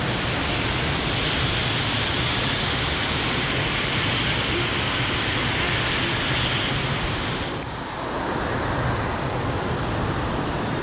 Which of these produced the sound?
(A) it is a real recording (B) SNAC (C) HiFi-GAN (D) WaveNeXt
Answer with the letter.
A